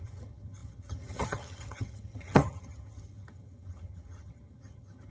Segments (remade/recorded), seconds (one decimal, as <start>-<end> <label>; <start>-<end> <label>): 0.0-5.1 remade